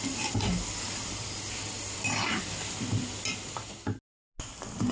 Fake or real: real